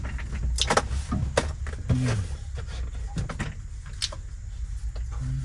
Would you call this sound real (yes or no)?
yes